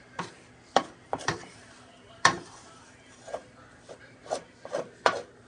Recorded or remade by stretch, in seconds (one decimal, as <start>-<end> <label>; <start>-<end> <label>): 0.0-5.5 remade